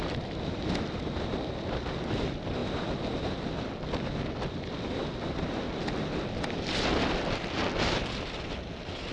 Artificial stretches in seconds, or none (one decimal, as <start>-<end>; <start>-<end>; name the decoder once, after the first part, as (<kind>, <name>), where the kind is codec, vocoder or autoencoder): none